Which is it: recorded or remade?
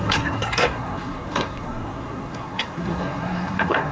remade